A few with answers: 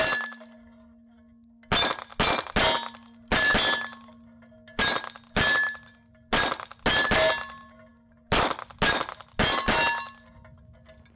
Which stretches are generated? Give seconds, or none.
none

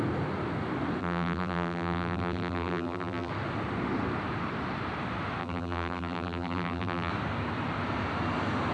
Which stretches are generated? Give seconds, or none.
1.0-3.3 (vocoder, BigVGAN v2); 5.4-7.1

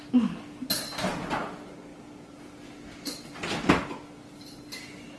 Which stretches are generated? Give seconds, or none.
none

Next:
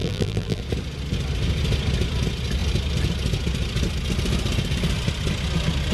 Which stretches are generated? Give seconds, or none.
0.0-0.6 (vocoder, BigVGAN v2)

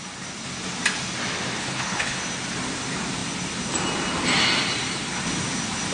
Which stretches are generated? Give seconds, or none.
1.6-2.2 (codec, HILCodec)

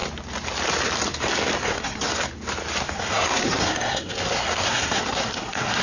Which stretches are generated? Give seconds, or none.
1.6-2.1 (codec, SNAC); 2.9-5.8

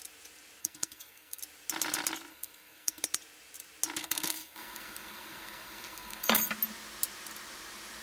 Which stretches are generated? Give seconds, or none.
0.6-1.4 (codec, SNAC); 2.3-3.0; 4.0-6.5

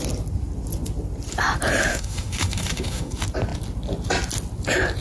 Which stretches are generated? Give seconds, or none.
1.9-3.1 (autoencoder, DAC-VAE)